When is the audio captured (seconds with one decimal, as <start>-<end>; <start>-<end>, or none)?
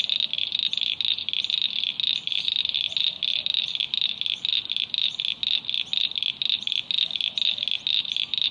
0.0-3.3; 3.8-8.5